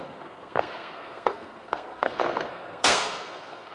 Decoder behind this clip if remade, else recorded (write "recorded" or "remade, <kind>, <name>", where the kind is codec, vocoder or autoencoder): remade, codec, SNAC